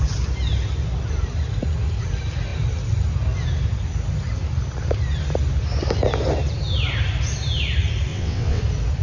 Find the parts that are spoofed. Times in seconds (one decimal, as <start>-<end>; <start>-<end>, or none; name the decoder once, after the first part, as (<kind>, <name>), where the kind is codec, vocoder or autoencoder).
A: 8.1-8.6 (vocoder, WaveNeXt)